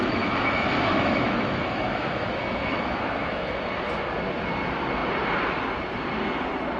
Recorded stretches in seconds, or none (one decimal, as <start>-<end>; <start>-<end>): 3.7-6.8